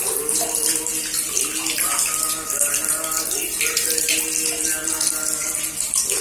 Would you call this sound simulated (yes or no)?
no